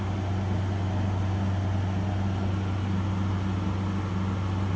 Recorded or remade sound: recorded